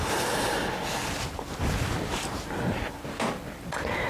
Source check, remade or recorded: recorded